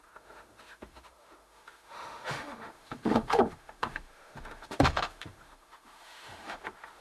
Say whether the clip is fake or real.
fake